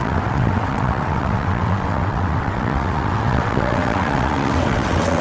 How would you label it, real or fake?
fake